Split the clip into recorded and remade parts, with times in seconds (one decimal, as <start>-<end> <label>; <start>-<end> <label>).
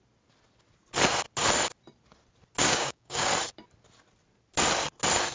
0.0-2.6 recorded; 2.6-3.3 remade; 3.3-5.3 recorded